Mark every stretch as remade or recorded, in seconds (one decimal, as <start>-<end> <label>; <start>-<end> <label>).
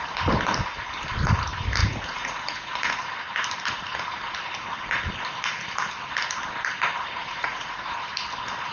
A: 0.0-1.8 recorded; 1.8-3.0 remade; 3.0-7.2 recorded; 7.2-7.9 remade; 7.9-8.7 recorded